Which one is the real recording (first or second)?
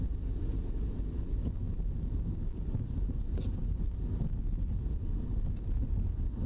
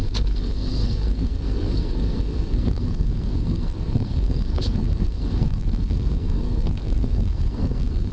first